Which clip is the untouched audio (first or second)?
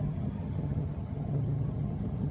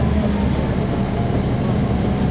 second